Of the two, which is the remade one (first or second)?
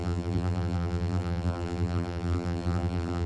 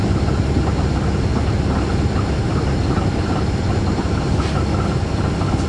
first